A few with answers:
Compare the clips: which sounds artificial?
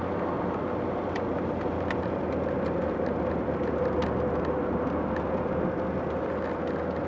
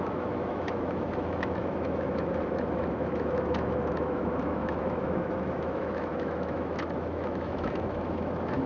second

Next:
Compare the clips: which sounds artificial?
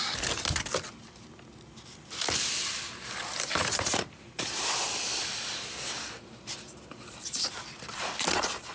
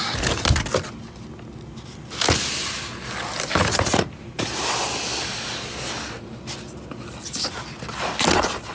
first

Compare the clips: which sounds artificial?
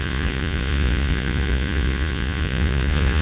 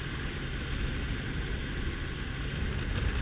first